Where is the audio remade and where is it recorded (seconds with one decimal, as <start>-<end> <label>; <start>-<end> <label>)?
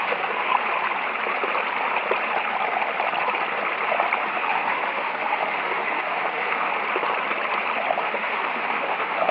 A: 0.0-0.5 remade; 0.5-4.3 recorded; 4.3-6.7 remade; 6.7-8.0 recorded; 8.0-9.3 remade